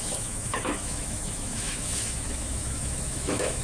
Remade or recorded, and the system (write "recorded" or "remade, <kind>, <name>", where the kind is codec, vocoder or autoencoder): remade, autoencoder, DAC-VAE